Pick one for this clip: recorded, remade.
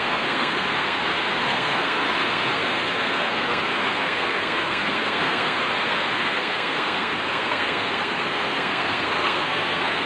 remade